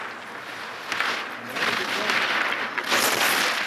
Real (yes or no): yes